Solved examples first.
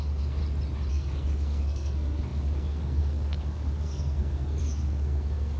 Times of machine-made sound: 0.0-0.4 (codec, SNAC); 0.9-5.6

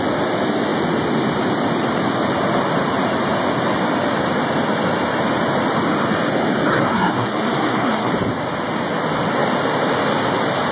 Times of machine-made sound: 6.7-8.1 (codec, SNAC)

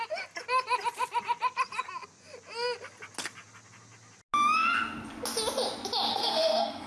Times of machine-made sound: 6.1-6.9 (codec, SNAC)